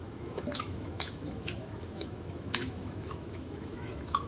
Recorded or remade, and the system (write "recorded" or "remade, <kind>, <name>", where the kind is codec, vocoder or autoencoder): remade, autoencoder, DAC-VAE